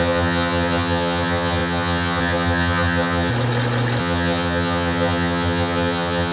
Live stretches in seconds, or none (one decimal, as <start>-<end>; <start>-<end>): 3.3-4.0